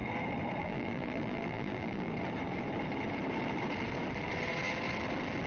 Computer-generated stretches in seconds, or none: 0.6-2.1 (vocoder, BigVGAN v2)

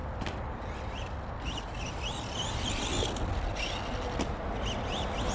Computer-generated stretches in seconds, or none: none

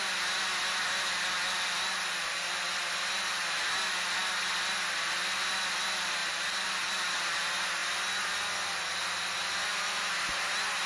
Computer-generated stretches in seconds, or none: 6.2-6.9 (vocoder, BigVGAN v2)

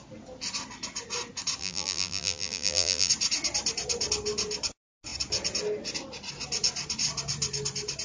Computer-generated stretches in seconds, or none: 1.6-3.1 (vocoder, BigVGAN v2)

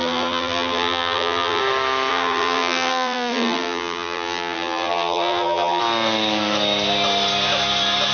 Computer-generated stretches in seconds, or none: 0.0-1.6 (vocoder, BigVGAN v2); 2.1-5.8